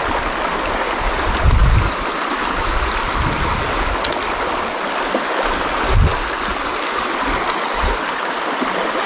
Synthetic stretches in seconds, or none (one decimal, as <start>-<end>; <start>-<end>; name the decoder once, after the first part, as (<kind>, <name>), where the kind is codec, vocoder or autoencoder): none